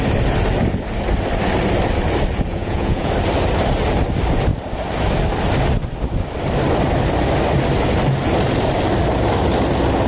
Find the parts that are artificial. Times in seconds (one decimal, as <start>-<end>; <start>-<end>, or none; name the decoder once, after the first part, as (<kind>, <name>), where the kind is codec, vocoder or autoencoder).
2.5-3.1 (vocoder, Vocos)